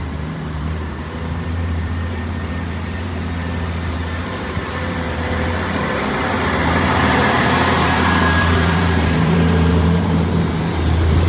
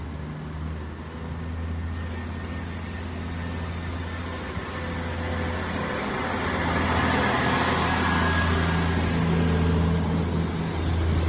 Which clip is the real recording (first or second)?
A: second